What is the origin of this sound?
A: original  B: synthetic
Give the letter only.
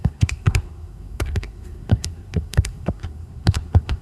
B